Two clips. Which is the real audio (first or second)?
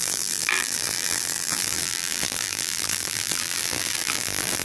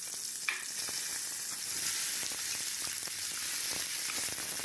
second